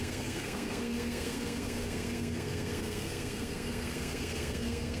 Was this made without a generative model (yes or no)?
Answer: no